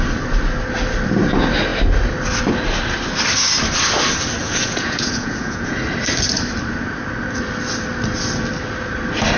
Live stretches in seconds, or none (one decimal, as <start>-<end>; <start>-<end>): 0.0-4.4; 5.8-9.4